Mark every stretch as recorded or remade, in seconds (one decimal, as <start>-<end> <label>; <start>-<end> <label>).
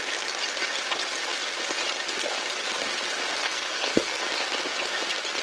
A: 0.0-3.4 recorded; 3.4-4.2 remade; 4.2-5.4 recorded